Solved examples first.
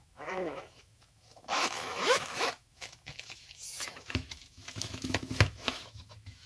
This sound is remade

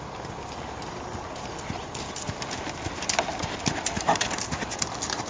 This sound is recorded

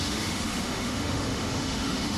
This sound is remade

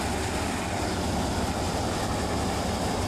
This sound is recorded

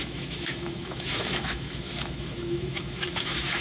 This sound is remade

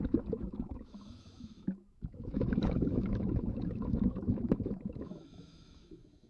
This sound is remade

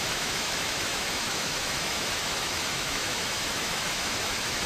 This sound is remade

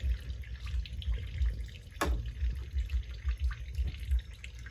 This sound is recorded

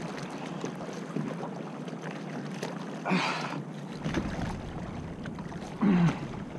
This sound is recorded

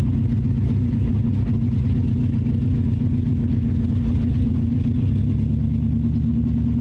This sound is recorded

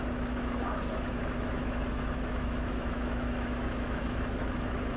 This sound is remade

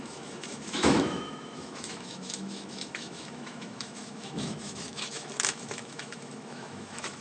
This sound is remade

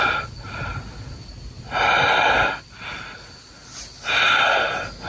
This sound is recorded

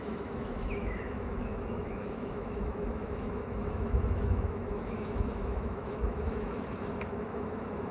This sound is remade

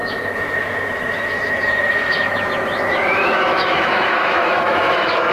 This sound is remade